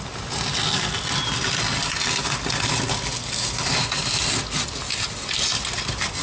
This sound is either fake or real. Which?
real